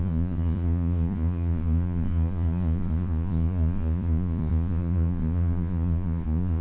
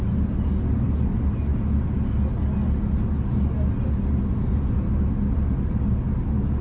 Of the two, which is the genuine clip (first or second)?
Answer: second